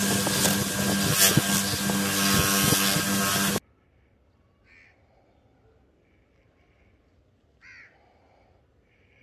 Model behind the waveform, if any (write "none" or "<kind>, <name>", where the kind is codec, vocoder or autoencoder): none